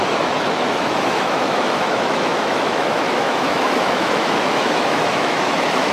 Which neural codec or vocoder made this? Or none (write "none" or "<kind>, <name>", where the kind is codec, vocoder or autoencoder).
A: autoencoder, DAC-VAE